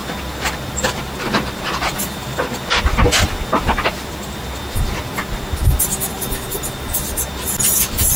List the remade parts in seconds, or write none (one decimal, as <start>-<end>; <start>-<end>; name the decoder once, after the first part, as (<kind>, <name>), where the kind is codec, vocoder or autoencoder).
none

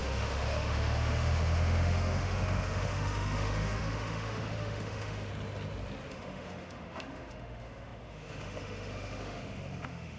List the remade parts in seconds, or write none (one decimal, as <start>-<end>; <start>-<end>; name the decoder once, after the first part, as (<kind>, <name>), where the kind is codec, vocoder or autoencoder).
0.0-5.3 (autoencoder, DAC-VAE); 6.1-10.2

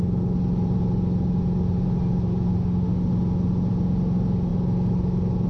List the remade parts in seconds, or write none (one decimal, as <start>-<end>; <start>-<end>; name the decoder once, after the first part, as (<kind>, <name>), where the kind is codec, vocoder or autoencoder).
2.5-3.1 (autoencoder, DAC-VAE)